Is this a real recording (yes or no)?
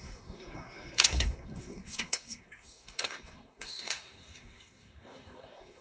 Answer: no